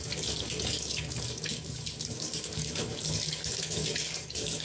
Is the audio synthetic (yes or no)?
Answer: yes